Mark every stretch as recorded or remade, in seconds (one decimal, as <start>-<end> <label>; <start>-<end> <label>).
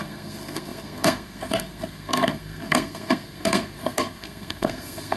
0.0-5.2 remade